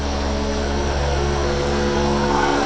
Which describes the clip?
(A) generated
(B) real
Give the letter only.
A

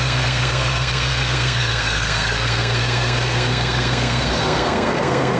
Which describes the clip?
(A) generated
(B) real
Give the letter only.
A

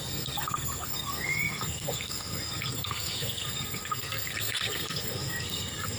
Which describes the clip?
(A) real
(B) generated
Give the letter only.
B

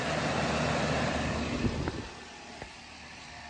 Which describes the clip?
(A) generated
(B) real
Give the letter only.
B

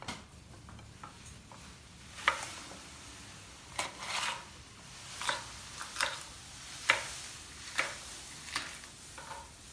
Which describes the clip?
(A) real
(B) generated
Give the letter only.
A